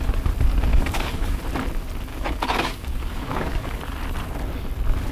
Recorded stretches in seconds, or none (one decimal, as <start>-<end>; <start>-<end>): 0.0-0.7; 1.4-2.1; 3.8-5.1

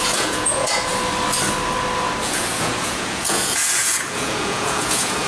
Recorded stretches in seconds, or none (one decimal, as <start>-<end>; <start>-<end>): 0.9-2.2

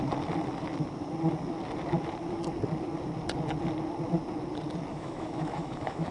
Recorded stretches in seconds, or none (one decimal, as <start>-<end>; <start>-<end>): 0.0-4.9